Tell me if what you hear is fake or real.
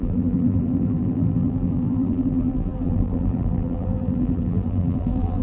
fake